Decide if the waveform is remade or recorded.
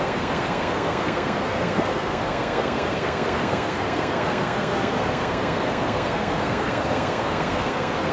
remade